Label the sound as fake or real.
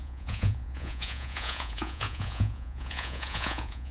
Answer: fake